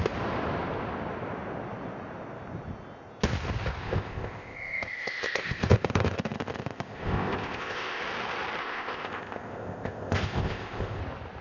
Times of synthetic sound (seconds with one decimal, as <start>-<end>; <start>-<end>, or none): 3.8-8.0; 8.6-11.0